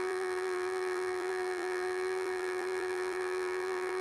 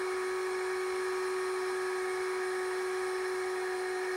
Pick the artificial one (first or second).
first